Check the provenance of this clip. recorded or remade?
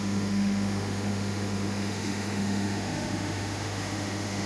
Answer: remade